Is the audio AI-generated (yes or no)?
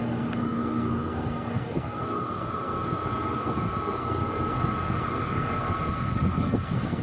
yes